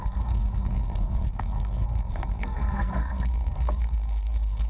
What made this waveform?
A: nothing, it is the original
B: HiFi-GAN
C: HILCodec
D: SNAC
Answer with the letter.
D